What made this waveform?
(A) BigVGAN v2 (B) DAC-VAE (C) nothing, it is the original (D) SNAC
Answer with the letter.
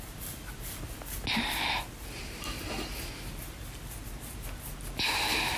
C